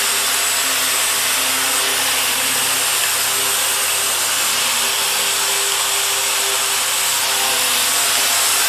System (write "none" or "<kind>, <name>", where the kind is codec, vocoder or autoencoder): none